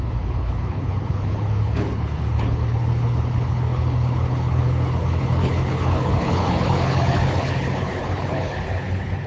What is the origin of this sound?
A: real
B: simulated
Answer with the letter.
B